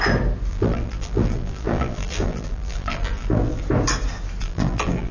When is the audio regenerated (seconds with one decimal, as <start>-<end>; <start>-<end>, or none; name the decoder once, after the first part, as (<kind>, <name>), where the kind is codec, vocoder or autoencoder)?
0.5-3.6 (vocoder, BigVGAN v2); 4.4-5.1